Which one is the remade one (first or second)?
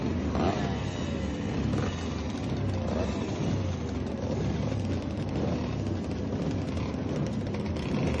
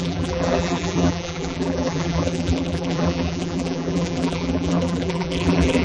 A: second